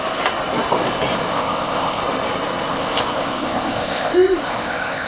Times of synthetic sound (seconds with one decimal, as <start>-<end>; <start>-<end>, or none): 1.3-2.0; 2.7-5.1